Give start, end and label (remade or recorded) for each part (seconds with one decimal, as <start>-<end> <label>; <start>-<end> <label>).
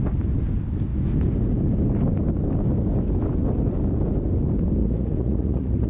0.0-4.8 recorded; 4.8-5.9 remade